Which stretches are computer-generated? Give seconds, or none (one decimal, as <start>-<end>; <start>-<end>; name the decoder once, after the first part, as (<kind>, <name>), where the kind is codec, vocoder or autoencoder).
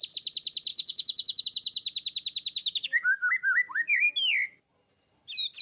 0.7-1.4 (codec, DAC); 2.6-3.3